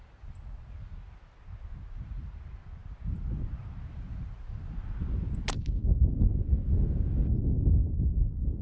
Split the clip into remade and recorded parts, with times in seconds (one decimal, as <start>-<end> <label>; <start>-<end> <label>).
0.0-8.6 recorded